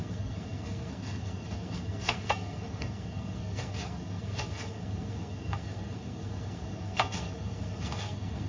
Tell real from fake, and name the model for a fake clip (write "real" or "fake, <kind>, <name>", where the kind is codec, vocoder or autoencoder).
fake, codec, SNAC